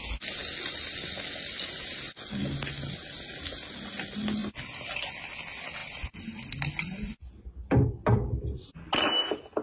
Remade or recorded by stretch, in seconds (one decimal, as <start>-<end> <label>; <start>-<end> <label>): 0.0-4.4 recorded; 4.4-5.1 remade; 5.1-5.8 recorded; 5.8-8.7 remade; 8.7-9.6 recorded